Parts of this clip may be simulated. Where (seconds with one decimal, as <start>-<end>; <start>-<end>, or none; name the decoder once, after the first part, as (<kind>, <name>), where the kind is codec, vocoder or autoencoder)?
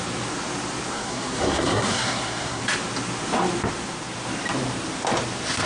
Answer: 0.9-2.6 (codec, SNAC)